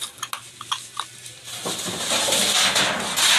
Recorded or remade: recorded